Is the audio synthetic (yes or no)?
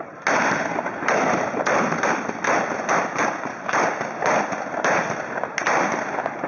no